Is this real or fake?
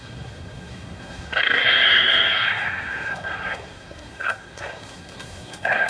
fake